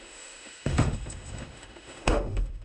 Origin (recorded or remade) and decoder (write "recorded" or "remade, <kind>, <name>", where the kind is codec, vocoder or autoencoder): remade, autoencoder, DAC-VAE